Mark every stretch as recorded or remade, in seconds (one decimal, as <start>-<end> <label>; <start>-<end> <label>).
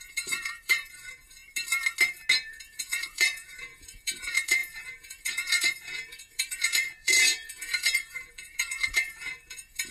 0.0-1.4 remade; 1.4-2.5 recorded; 2.5-9.9 remade